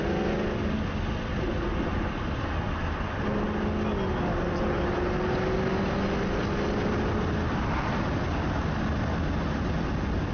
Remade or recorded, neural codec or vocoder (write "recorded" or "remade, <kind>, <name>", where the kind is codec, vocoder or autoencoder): recorded